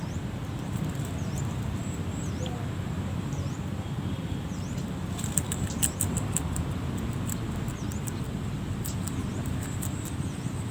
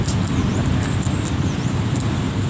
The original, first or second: second